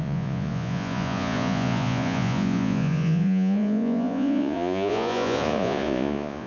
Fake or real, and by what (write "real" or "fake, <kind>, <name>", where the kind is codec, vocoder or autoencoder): fake, vocoder, Vocos